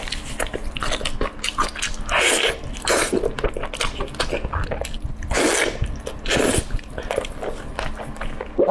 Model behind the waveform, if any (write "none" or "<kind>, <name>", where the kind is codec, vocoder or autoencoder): none